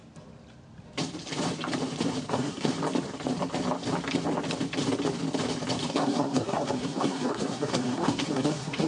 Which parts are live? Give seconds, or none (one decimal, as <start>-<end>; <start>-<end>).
0.0-2.3; 2.7-5.9